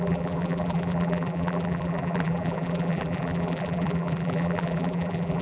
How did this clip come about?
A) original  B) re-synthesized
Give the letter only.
B